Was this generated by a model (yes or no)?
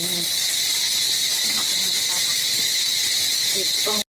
no